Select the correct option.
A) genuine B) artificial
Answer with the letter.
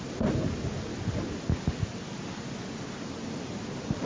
A